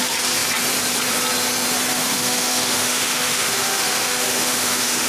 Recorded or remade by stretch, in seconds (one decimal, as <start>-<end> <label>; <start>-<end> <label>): 0.0-1.9 recorded; 1.9-5.1 remade